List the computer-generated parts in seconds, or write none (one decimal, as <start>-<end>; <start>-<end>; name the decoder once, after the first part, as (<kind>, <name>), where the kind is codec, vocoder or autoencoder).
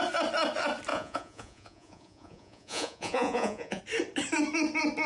0.9-3.8 (vocoder, Vocos)